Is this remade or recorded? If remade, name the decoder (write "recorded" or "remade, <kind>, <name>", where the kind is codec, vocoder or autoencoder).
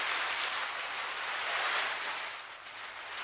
recorded